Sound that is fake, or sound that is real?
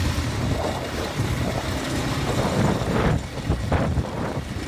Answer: fake